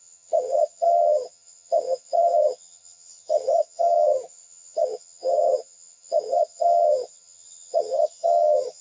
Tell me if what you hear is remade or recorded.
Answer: remade